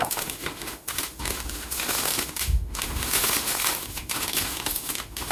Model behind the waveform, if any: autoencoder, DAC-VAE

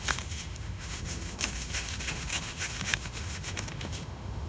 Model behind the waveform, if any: autoencoder, DAC-VAE